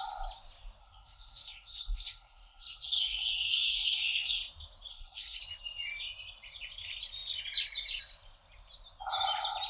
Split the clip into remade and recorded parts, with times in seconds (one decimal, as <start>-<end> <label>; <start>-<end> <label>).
0.0-0.8 recorded; 0.8-4.4 remade; 4.4-4.9 recorded; 4.9-5.4 remade; 5.4-9.7 recorded

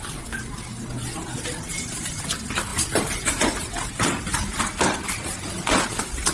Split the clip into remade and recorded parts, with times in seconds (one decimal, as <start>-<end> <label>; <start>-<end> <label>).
0.0-6.3 recorded

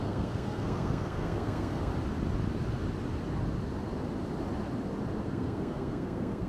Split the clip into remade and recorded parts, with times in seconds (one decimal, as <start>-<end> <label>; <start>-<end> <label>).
0.0-1.9 remade; 1.9-5.2 recorded; 5.2-6.5 remade